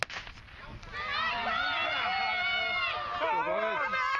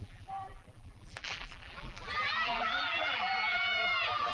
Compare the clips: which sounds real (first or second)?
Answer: first